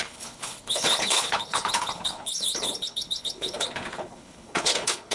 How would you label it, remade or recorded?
remade